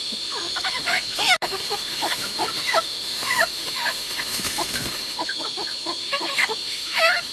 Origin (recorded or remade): remade